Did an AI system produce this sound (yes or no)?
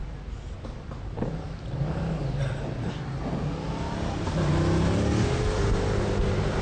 no